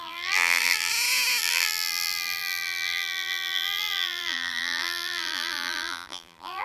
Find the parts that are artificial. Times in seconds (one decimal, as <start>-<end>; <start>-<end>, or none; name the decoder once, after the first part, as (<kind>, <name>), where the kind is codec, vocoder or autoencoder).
0.0-0.9 (vocoder, BigVGAN v2); 1.4-6.6